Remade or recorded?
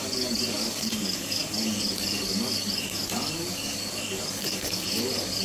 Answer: remade